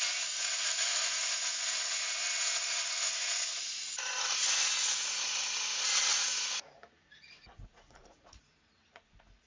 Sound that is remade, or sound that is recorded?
remade